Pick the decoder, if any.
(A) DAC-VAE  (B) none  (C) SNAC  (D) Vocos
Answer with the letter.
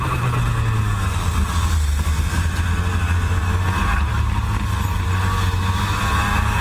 B